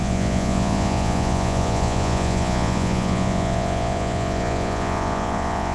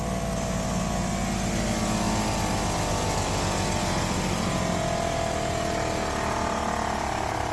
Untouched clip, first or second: second